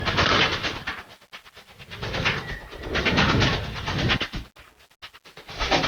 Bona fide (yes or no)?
yes